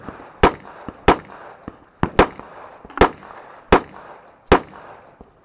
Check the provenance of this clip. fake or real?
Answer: real